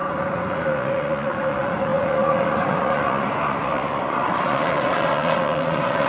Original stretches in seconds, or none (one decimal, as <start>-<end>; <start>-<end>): none